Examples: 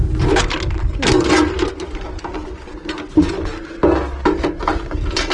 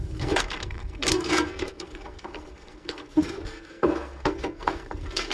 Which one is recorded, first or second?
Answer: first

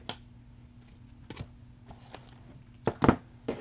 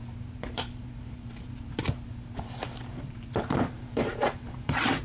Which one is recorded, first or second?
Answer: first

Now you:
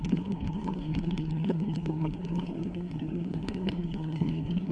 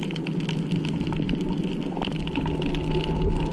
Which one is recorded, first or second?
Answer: second